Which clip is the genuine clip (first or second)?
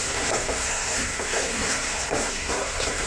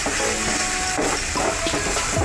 second